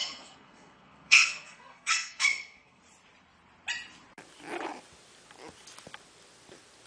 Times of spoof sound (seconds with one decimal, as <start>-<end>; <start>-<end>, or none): 0.0-2.8